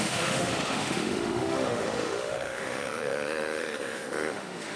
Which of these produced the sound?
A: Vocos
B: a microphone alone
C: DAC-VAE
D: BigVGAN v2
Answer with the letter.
C